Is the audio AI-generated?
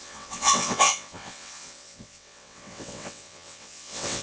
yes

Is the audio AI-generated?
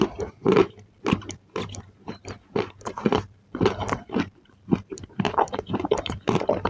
yes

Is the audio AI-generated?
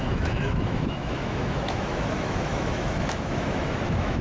yes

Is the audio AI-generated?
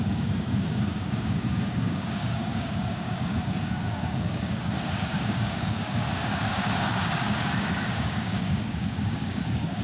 yes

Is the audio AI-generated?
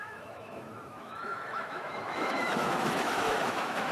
yes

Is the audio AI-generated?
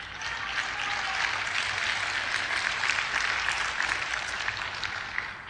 no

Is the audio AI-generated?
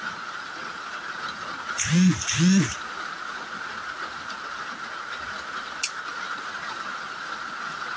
yes